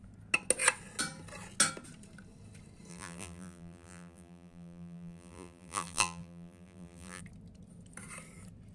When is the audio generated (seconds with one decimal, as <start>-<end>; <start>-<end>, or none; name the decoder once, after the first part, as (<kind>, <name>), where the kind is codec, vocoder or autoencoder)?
2.9-7.2 (vocoder, BigVGAN v2)